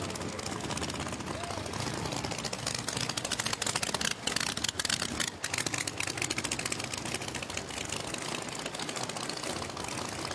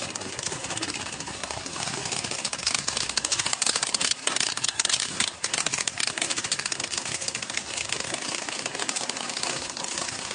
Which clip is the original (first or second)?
first